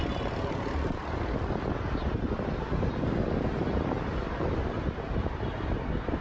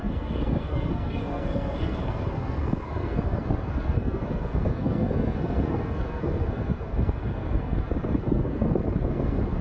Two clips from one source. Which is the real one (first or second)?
first